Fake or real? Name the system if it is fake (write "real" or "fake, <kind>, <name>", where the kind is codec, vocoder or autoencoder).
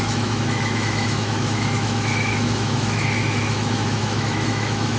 fake, autoencoder, DAC-VAE